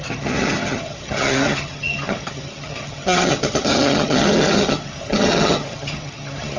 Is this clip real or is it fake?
fake